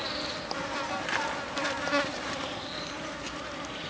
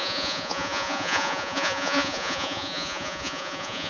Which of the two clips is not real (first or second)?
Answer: second